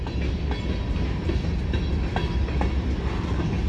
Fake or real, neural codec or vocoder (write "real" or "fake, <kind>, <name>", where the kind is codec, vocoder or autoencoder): real